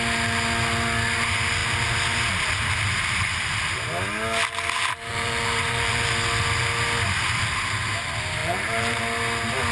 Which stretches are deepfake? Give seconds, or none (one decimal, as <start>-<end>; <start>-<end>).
5.1-6.1; 8.4-9.0